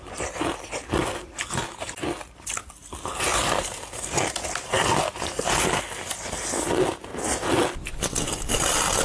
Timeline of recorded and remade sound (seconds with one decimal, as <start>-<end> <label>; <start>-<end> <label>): 0.0-3.3 recorded; 3.3-4.3 remade; 4.3-9.0 recorded